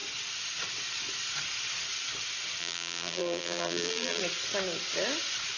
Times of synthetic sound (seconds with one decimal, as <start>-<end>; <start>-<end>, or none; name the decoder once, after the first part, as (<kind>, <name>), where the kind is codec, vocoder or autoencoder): 2.6-4.2 (vocoder, BigVGAN v2)